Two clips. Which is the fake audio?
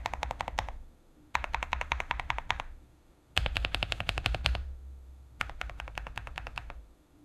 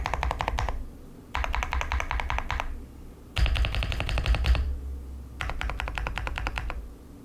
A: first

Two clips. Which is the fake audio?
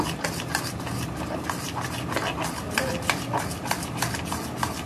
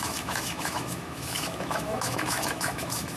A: second